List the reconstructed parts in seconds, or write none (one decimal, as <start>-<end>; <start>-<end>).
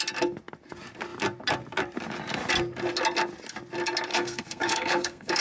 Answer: 4.1-5.4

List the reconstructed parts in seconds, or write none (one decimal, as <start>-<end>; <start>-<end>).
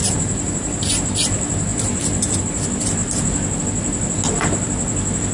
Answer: 0.0-0.8; 1.7-2.4